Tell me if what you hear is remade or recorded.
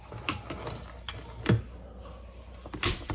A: recorded